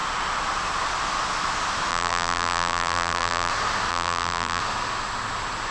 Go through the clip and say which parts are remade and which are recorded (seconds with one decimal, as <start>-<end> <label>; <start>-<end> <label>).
0.0-1.9 recorded; 1.9-3.5 remade; 3.5-3.9 recorded; 3.9-4.6 remade; 4.6-5.7 recorded